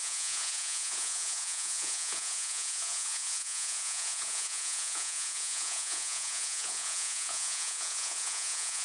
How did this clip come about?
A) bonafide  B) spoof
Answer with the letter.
B